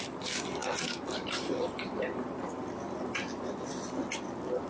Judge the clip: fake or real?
fake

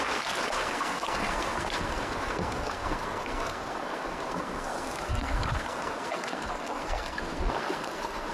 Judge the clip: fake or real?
fake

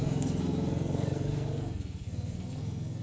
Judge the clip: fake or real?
fake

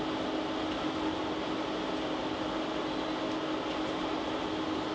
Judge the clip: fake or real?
real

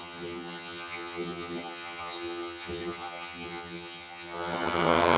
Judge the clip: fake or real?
fake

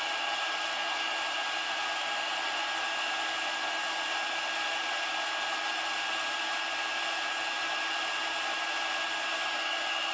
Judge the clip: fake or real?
real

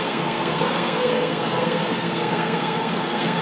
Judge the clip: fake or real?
fake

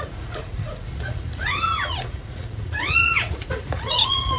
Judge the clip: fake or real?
fake